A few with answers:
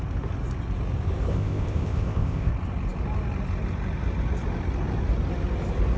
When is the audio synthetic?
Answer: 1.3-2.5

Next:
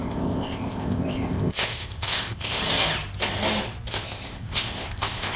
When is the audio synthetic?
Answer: 0.0-2.6; 3.9-5.4

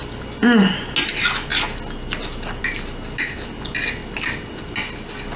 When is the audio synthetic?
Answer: none